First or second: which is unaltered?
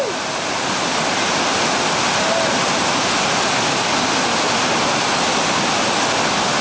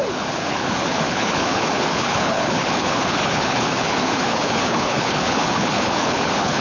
first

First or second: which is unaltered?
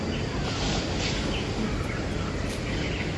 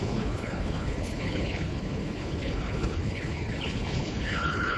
first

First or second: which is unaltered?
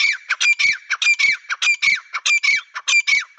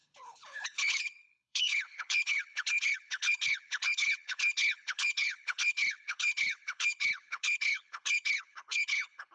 first